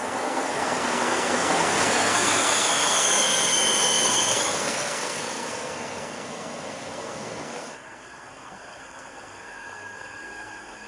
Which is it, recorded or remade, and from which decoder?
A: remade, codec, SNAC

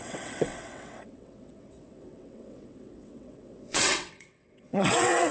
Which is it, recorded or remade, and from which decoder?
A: remade, vocoder, WaveNeXt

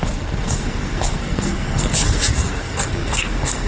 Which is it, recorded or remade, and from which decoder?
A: remade, codec, SNAC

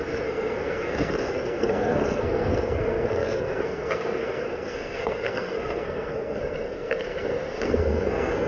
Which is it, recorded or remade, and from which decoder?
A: remade, codec, SNAC